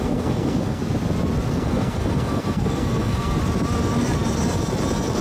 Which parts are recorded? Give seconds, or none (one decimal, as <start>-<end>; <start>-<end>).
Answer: 0.8-1.5; 3.4-5.2